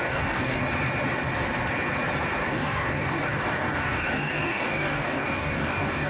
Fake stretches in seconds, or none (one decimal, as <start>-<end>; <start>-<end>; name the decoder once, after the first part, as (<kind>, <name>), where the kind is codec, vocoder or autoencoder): 0.0-0.6 (codec, DAC); 2.4-6.1